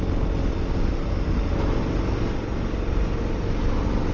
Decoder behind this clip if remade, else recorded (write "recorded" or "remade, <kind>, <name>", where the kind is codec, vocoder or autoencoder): recorded